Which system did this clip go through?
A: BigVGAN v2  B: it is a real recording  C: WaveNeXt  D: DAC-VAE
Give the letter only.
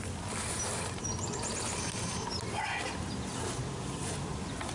B